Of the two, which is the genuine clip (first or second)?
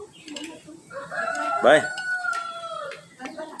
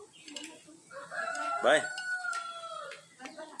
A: second